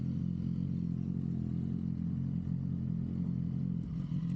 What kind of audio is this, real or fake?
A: real